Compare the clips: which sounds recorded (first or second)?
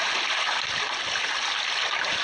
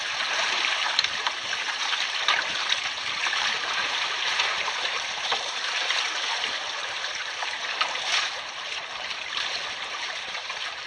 first